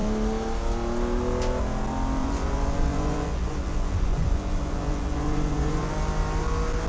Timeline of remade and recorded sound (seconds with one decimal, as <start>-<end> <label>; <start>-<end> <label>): 0.0-2.2 recorded; 2.2-5.9 remade; 5.9-6.9 recorded